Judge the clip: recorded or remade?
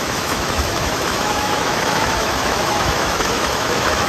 remade